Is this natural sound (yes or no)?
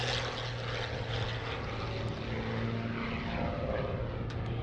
yes